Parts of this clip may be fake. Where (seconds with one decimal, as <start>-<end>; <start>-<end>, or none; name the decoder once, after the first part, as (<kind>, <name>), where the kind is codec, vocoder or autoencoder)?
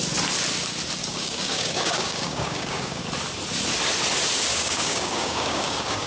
1.0-3.0 (codec, DAC); 4.5-6.1